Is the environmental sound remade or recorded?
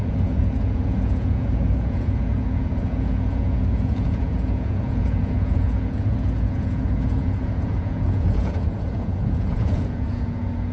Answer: remade